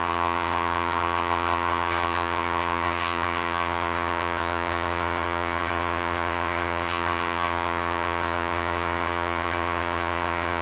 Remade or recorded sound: remade